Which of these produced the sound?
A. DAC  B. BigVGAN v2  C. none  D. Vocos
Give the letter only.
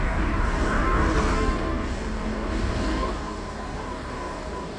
A